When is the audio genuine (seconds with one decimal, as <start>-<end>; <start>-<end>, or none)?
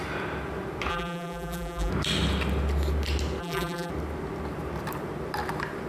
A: 0.0-0.9; 1.9-3.4; 3.9-5.9